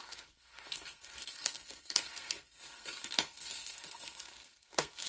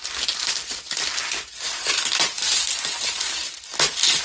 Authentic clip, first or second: second